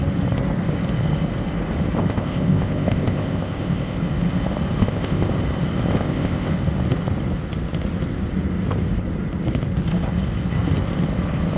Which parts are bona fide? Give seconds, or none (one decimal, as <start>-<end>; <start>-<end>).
0.0-2.0; 4.0-4.8; 5.3-5.9; 6.5-11.6